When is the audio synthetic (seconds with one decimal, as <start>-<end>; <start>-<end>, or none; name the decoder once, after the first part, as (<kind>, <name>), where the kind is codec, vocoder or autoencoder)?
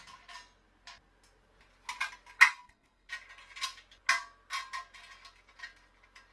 2.5-3.1 (codec, SNAC)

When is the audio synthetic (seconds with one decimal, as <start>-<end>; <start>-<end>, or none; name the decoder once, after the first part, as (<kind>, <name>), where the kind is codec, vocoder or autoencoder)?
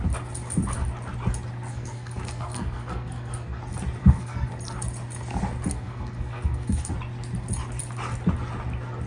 1.7-3.6 (codec, SNAC); 4.0-4.5; 5.7-6.9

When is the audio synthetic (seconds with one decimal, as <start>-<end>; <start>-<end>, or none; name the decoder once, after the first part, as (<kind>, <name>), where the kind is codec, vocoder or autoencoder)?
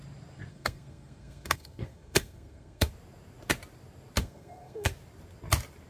0.5-2.9 (codec, SNAC); 4.2-4.9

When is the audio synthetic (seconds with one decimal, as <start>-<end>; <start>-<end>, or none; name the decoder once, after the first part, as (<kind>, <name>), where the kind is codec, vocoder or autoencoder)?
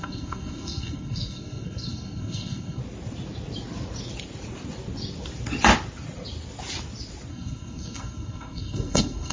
0.0-2.8 (codec, SNAC); 7.3-9.3